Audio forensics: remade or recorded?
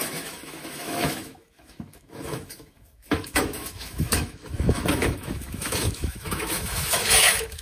remade